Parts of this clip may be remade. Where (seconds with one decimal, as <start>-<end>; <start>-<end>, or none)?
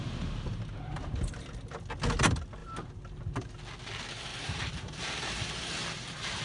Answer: 2.6-3.2; 4.3-6.4